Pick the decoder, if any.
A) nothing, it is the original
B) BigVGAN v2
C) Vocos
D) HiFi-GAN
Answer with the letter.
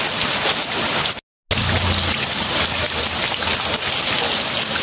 A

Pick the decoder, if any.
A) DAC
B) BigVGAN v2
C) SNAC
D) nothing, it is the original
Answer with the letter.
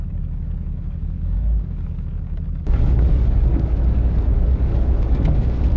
A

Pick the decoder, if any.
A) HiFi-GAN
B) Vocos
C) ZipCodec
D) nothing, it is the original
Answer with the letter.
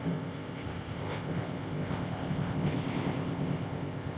C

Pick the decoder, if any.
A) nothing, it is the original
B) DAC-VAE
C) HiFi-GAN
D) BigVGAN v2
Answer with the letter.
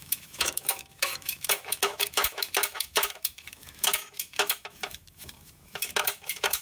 B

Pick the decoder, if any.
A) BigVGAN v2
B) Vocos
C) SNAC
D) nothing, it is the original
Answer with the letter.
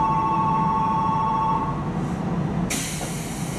D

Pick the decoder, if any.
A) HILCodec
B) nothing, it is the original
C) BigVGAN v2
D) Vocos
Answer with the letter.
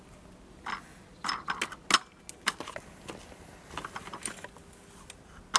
B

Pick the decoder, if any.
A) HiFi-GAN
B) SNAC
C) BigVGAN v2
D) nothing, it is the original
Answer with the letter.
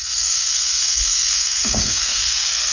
B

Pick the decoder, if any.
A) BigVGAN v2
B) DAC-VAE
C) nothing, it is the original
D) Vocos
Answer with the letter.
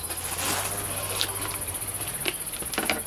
C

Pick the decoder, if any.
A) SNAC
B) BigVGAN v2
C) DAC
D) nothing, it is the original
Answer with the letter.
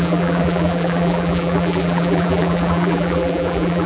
B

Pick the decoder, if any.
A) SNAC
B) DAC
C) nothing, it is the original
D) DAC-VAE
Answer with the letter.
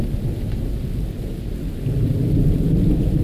C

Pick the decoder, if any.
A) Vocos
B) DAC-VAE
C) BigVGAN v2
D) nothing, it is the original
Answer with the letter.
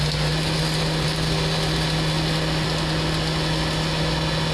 D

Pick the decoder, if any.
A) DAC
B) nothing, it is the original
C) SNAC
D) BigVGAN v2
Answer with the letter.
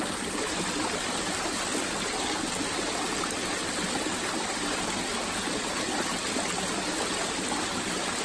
B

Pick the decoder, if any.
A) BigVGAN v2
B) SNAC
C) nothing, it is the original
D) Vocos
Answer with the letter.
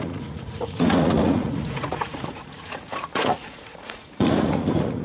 D